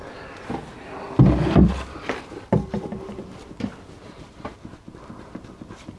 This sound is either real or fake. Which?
real